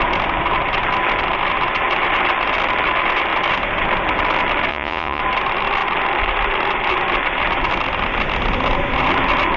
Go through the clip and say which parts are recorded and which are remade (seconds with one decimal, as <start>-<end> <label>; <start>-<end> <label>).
0.0-4.7 recorded; 4.7-5.2 remade; 5.2-9.6 recorded